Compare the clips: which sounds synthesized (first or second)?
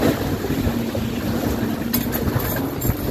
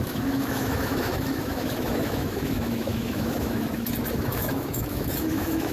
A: second